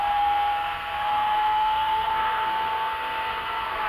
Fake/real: fake